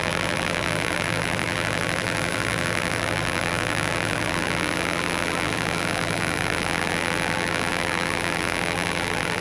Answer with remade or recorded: remade